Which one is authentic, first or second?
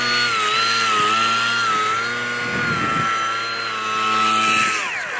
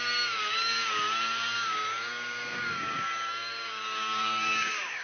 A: first